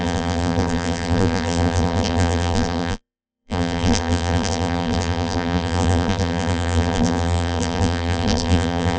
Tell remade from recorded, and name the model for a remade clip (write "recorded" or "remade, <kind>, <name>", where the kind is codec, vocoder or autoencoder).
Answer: remade, vocoder, BigVGAN v2